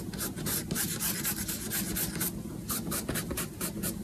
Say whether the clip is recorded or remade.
recorded